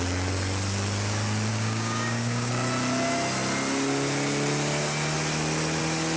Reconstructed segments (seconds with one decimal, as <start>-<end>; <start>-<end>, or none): 1.5-2.5